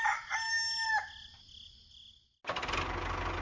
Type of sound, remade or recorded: recorded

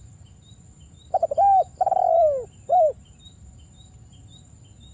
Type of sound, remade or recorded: recorded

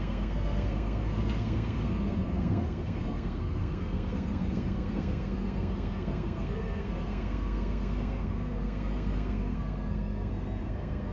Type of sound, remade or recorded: remade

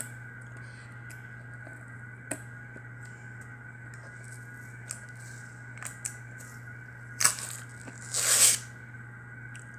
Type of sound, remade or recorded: recorded